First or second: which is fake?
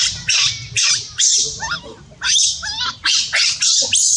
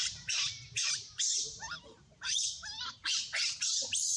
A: second